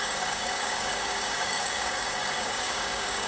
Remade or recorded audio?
remade